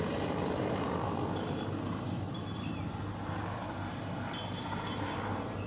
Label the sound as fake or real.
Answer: real